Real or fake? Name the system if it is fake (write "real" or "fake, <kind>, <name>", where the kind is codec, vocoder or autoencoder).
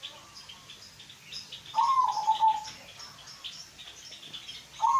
real